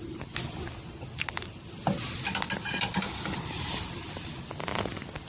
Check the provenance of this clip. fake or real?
real